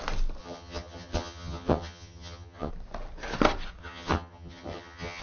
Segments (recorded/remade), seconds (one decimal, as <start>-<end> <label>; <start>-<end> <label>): 0.0-0.4 recorded; 0.4-2.7 remade; 2.7-3.8 recorded; 3.8-5.2 remade